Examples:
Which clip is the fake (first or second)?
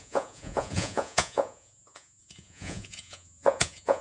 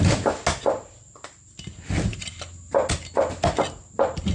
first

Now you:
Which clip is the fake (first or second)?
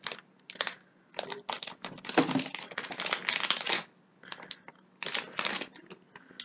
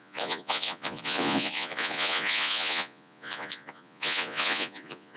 second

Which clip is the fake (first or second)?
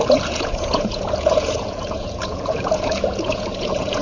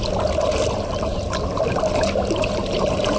first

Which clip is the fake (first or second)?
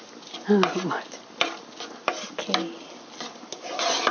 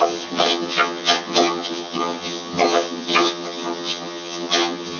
second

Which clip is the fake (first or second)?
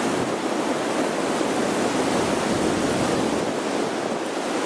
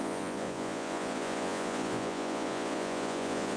second